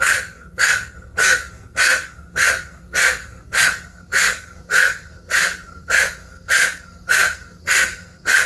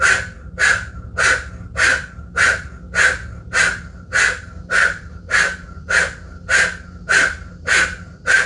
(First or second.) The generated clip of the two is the first